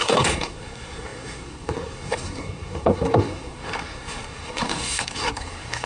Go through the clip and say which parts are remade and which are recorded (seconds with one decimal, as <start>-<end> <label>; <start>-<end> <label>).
0.0-5.9 remade